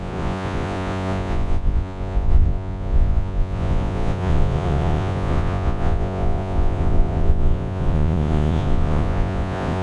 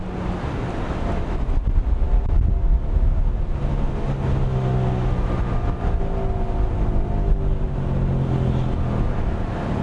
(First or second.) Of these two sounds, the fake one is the first